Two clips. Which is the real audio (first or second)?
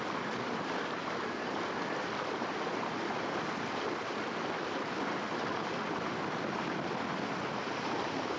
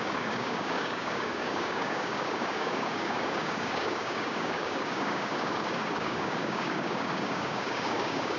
first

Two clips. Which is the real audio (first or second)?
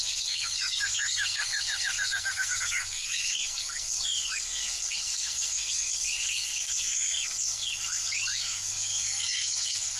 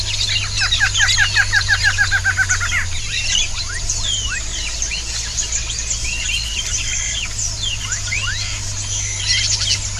second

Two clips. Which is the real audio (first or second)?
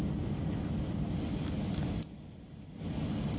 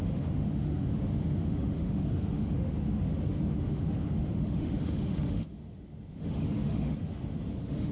first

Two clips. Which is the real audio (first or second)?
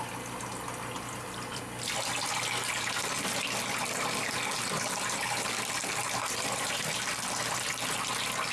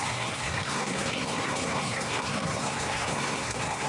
first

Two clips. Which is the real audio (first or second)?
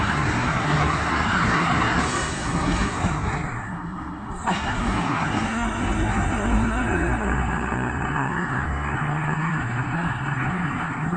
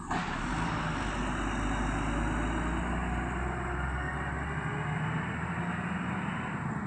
second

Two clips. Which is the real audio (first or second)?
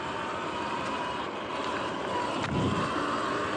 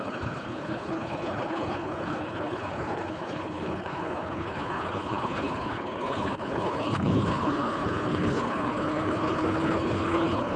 first